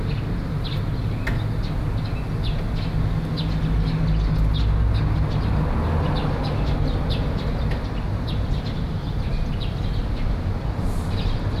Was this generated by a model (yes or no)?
no